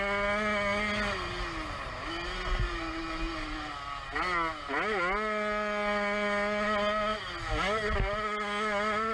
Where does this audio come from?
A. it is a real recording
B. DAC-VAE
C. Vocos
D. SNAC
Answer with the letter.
A